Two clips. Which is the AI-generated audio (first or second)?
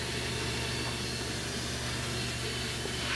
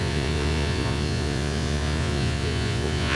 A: second